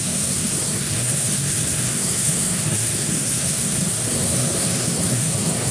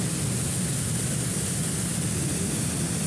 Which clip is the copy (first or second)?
first